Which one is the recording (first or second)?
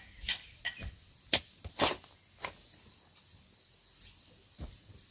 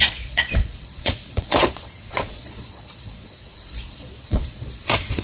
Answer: first